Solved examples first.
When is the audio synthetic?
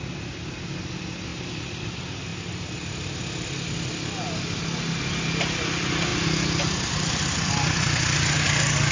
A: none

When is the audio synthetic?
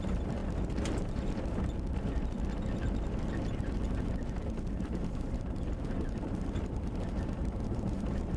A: 0.0-0.4 (vocoder, BigVGAN v2); 4.7-8.4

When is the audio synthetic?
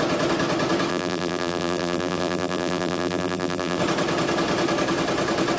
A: 0.9-3.8 (vocoder, BigVGAN v2)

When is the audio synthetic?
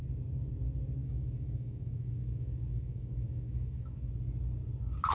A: 1.0-4.1 (autoencoder, DAC-VAE)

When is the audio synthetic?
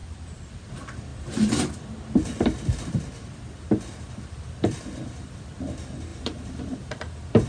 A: 0.0-0.5 (vocoder, BigVGAN v2); 1.1-5.6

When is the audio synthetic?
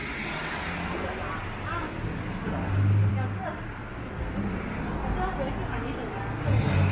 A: none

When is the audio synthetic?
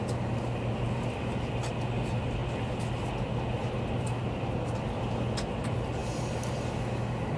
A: none